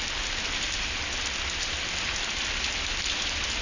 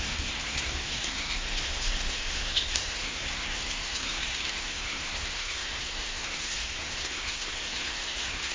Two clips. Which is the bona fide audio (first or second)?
first